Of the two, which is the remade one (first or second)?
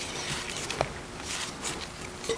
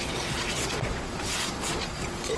second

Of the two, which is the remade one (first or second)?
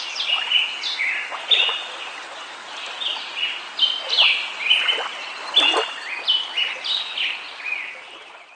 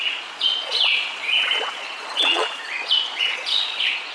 second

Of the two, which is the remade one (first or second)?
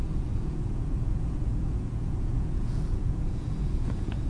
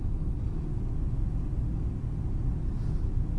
first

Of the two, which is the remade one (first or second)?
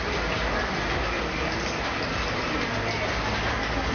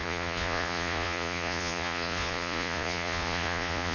second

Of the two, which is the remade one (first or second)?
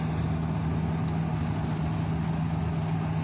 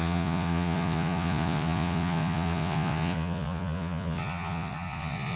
second